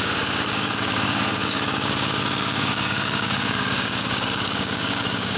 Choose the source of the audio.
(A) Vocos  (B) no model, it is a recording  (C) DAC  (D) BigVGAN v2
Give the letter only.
C